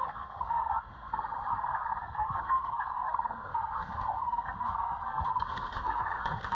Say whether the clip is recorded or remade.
remade